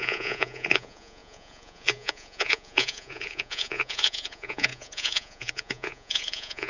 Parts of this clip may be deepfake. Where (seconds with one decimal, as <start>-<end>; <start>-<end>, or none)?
0.0-6.7